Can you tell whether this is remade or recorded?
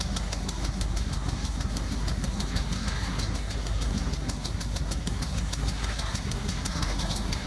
remade